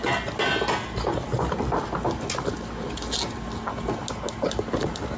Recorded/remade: recorded